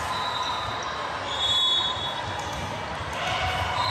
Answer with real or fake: real